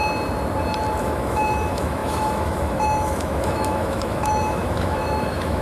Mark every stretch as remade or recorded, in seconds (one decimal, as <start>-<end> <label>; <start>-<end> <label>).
0.0-1.0 recorded; 1.0-5.6 remade